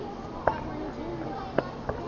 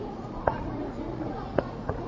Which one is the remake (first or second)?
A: second